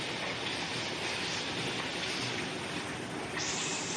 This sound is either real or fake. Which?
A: real